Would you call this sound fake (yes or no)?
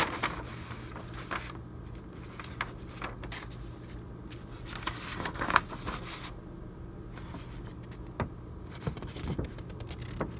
no